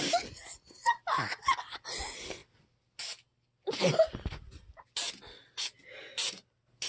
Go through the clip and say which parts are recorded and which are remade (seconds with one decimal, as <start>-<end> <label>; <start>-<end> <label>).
0.0-6.9 recorded